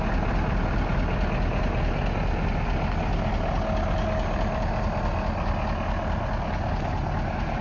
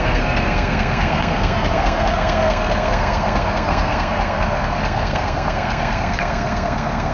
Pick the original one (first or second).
first